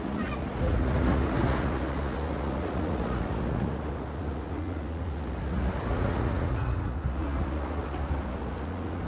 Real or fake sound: fake